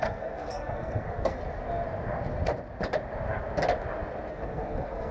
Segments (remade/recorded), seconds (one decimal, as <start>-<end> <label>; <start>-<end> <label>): 0.0-1.4 remade; 1.4-4.3 recorded; 4.3-5.1 remade